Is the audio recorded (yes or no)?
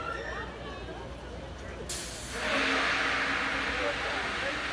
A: yes